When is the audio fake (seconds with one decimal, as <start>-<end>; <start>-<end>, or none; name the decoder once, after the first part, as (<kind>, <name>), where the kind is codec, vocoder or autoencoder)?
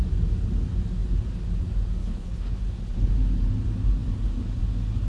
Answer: 2.0-2.6 (codec, HILCodec)